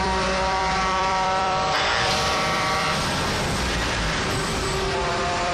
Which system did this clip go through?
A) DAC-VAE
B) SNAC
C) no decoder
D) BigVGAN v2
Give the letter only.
D